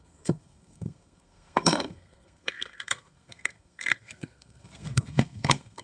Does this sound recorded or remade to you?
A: remade